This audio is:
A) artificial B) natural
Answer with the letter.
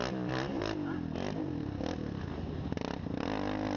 B